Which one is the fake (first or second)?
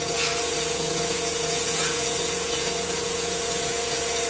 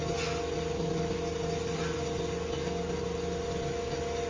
first